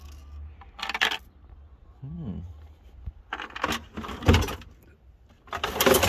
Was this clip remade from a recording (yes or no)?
no